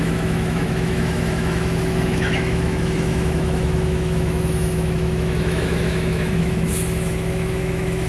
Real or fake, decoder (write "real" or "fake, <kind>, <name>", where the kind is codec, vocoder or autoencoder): fake, autoencoder, DAC-VAE